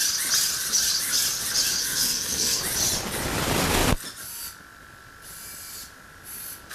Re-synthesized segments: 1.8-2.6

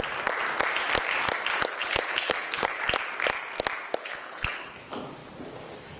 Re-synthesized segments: 1.8-2.8; 4.0-4.7

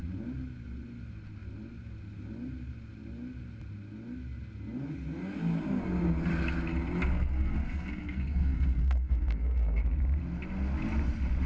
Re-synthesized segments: 7.1-9.8

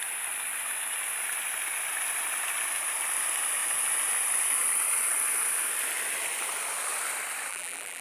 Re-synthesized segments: 7.5-8.0

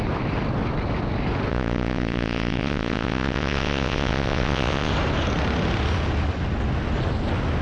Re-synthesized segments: 1.5-4.9

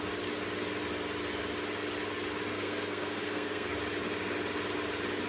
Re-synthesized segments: 2.5-3.7

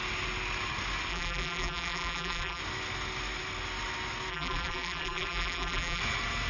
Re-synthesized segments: 1.1-2.6; 4.3-6.0

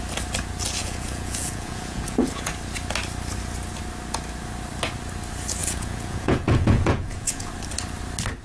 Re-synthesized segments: 0.8-2.5; 5.6-7.5